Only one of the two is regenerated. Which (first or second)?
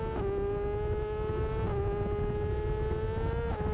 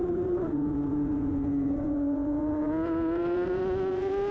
second